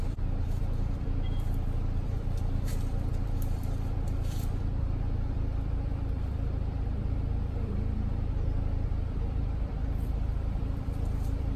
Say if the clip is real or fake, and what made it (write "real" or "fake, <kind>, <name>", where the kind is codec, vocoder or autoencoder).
fake, vocoder, BigVGAN v2